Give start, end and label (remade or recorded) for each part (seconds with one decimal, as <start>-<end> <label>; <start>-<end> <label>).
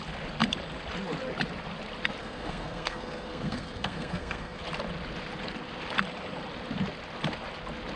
0.0-2.2 recorded; 2.2-4.6 remade; 4.6-8.0 recorded